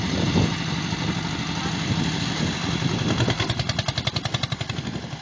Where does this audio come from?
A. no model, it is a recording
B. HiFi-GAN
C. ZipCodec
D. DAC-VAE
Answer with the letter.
A